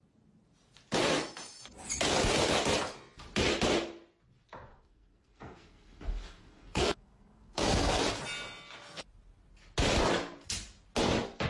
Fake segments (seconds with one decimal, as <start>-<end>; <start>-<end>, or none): 4.7-8.0